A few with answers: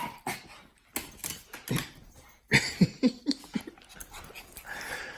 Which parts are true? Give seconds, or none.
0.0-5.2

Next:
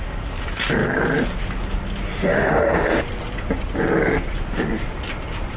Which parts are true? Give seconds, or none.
0.0-2.1; 3.0-5.6

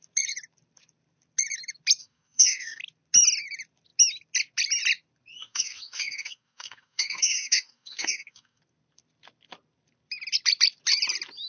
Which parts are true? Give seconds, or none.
0.0-2.0; 2.8-5.4; 8.6-11.5

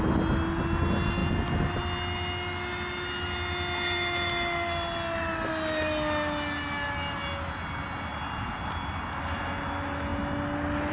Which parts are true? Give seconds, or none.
0.0-10.9